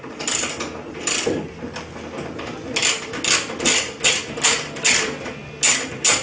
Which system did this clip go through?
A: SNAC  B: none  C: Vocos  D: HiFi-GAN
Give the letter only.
B